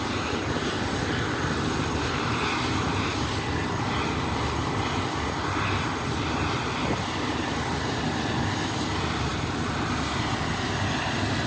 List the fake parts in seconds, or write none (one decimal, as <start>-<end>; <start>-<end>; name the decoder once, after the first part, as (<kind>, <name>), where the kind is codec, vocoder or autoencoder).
none

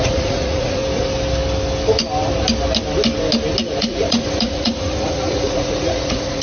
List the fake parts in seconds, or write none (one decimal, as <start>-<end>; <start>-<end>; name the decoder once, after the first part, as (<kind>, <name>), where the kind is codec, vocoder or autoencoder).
0.0-0.8 (vocoder, Vocos); 3.8-6.4

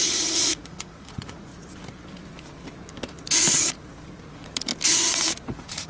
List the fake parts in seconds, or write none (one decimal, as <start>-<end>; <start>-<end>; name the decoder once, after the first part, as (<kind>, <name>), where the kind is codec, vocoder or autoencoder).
0.0-1.5 (vocoder, Vocos); 4.3-4.7; 5.5-5.9

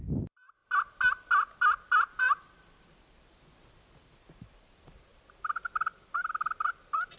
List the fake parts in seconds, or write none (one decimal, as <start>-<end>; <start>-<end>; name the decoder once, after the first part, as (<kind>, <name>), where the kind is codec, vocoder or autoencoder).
0.0-0.6 (vocoder, BigVGAN v2); 2.2-7.2

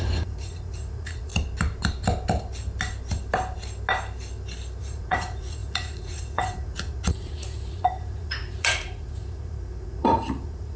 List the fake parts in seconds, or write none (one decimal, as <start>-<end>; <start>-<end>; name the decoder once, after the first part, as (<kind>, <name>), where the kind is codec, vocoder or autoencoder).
0.0-1.3 (vocoder, Vocos); 4.8-10.8

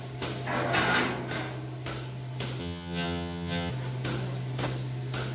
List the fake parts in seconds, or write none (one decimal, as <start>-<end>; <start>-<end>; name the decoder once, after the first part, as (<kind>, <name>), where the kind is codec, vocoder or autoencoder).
2.6-3.7 (vocoder, HiFi-GAN)

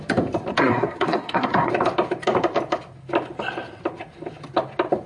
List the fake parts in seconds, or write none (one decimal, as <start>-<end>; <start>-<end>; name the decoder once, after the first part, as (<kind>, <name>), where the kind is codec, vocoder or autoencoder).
0.5-1.7 (codec, SNAC)